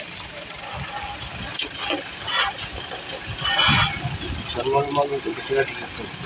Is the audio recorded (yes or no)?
yes